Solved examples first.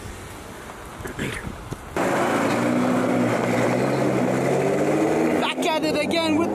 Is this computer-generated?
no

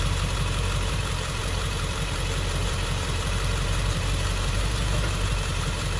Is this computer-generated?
yes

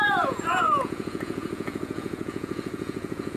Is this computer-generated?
yes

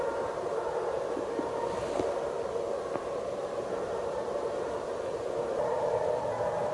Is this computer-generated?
no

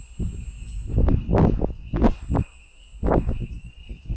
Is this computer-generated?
no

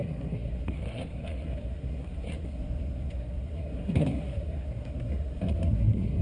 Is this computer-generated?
yes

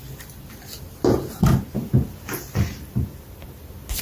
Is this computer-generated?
no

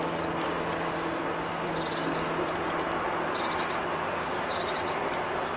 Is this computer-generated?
no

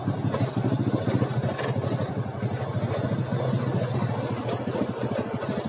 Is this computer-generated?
no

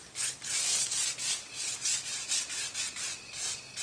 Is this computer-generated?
no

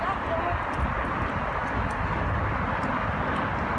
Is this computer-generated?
no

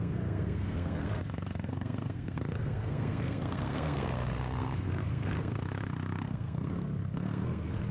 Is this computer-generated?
yes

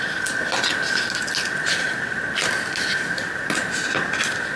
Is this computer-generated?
no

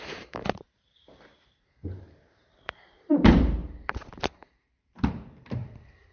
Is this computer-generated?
yes